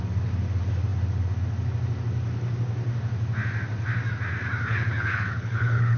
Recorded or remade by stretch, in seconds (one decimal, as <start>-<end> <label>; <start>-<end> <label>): 0.0-4.7 recorded; 4.7-6.0 remade